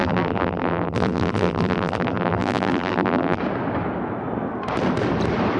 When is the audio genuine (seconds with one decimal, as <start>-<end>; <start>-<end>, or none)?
3.4-5.6